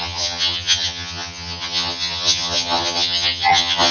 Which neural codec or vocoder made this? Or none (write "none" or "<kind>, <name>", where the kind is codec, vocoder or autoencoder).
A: vocoder, HiFi-GAN